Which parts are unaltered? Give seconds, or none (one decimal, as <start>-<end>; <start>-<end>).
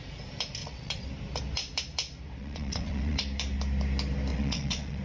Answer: 0.0-0.6; 1.1-2.4; 3.2-4.3